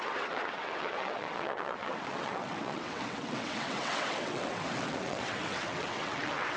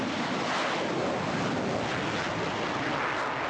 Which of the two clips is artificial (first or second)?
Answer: first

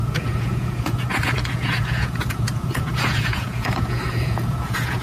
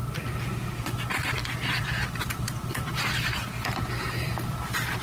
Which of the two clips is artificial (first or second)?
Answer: first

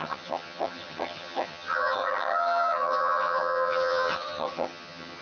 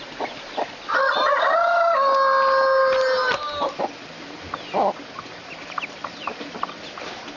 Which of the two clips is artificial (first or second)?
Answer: first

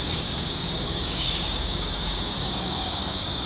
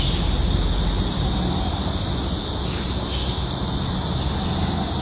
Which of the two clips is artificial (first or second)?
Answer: first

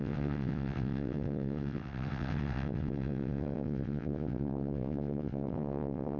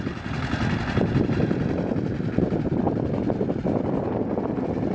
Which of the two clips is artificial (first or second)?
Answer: first